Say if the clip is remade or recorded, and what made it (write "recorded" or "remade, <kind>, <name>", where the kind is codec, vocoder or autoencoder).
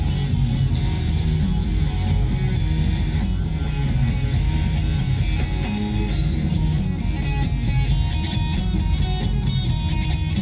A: recorded